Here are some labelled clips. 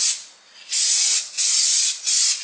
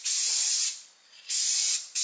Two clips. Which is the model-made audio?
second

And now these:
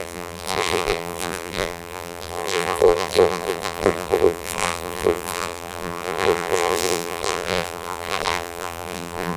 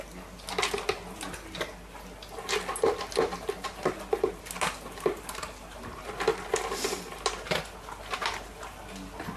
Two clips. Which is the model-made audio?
first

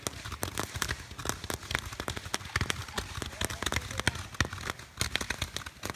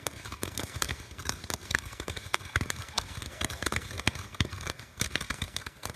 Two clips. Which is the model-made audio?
second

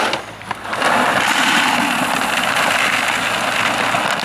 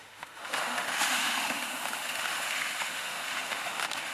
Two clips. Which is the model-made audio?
second